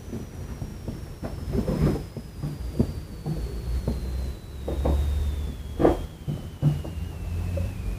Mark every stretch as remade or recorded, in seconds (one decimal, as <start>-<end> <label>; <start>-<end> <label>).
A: 0.0-0.7 recorded; 0.7-3.1 remade; 3.1-5.8 recorded; 5.8-8.0 remade